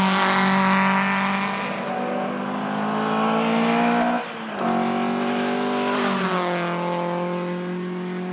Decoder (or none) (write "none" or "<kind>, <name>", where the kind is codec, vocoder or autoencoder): none